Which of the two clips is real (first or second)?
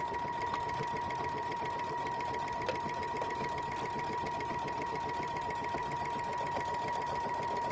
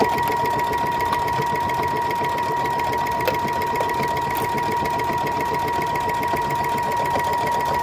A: second